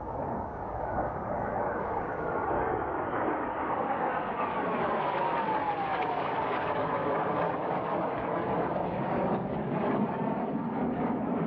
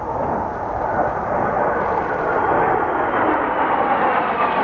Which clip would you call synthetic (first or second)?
first